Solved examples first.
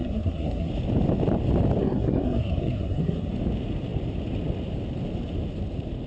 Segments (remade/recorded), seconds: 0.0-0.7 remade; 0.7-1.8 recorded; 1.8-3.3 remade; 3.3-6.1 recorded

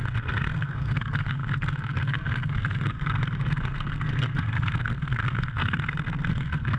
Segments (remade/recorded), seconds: 0.0-6.8 remade

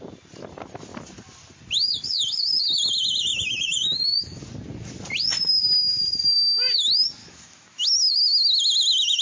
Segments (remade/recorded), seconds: 0.0-3.3 recorded; 3.3-4.4 remade; 4.4-7.2 recorded; 7.2-8.2 remade; 8.2-9.2 recorded

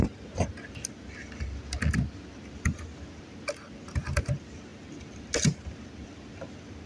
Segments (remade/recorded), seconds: 0.0-6.9 recorded

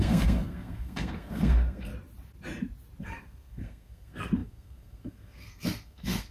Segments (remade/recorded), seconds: 0.0-1.9 remade; 1.9-3.0 recorded; 3.0-6.3 remade